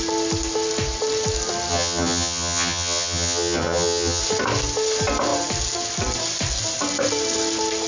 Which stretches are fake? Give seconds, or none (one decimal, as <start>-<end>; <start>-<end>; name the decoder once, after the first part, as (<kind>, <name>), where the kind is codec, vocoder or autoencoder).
1.7-4.2 (vocoder, HiFi-GAN)